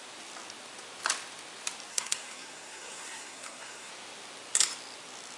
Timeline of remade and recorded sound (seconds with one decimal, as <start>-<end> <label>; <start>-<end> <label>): 0.0-1.9 recorded; 1.9-3.9 remade; 3.9-5.4 recorded